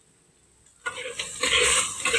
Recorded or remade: recorded